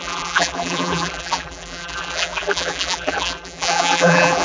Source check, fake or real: fake